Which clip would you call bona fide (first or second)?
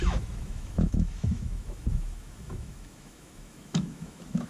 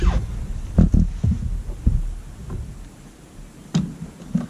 second